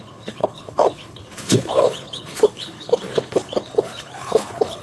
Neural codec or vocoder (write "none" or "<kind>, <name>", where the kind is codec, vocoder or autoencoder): codec, HILCodec